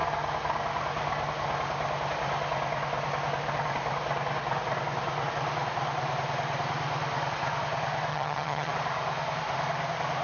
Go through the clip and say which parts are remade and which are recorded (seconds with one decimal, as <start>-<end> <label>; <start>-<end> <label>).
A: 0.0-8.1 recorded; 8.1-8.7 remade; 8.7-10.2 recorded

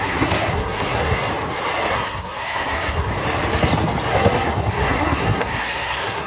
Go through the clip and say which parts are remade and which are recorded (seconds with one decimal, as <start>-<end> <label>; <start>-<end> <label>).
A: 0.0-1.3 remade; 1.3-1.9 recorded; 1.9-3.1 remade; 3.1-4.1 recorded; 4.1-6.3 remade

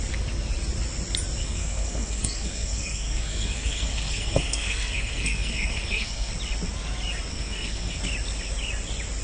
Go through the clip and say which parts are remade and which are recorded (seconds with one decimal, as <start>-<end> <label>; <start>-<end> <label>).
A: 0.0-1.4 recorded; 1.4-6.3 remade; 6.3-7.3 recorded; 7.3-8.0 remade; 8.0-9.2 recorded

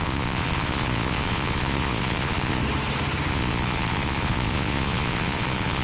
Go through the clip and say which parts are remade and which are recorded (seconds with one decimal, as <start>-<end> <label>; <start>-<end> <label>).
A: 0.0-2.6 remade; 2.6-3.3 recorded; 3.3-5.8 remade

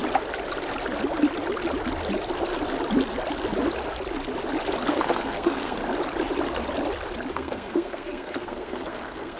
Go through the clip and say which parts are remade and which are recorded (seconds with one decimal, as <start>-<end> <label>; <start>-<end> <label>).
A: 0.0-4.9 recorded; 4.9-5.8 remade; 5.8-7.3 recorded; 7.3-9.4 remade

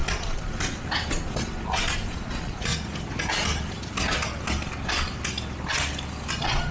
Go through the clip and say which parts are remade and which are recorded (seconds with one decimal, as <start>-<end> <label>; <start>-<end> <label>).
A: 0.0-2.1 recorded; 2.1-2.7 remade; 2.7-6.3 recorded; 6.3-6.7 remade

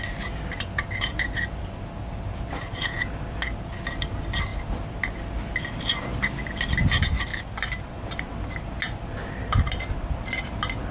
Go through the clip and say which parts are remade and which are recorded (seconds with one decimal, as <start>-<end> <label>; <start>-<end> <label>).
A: 0.0-10.9 recorded